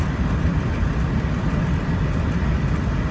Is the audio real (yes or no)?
yes